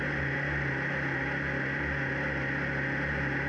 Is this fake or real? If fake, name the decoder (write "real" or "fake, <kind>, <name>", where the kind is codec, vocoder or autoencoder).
real